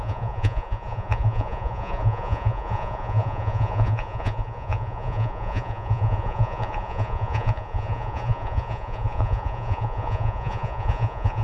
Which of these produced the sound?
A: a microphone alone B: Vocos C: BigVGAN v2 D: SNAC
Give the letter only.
B